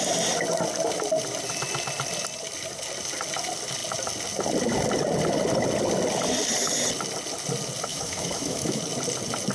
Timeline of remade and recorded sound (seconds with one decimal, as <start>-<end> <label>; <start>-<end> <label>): 0.0-7.9 recorded; 7.9-8.8 remade; 8.8-9.5 recorded